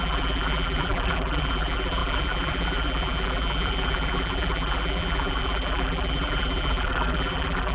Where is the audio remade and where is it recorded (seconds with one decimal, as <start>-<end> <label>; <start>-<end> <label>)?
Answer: 0.0-7.7 remade